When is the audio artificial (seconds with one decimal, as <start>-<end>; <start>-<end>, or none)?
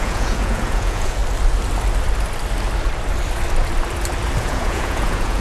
0.0-1.2; 4.4-5.4